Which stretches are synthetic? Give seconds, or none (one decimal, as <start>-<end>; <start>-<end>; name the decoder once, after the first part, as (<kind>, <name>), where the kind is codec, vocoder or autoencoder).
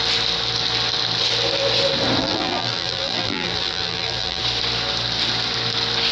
2.2-4.4 (vocoder, BigVGAN v2)